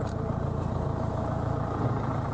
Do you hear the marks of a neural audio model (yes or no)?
yes